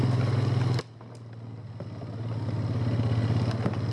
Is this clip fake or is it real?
real